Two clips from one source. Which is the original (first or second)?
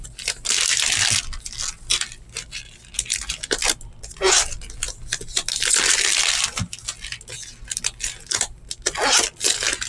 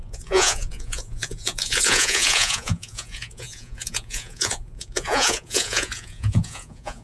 first